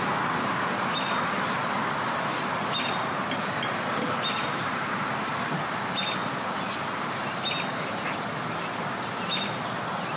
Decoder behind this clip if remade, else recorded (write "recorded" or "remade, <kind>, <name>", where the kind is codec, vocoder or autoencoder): recorded